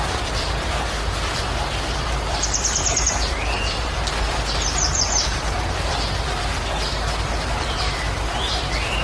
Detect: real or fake fake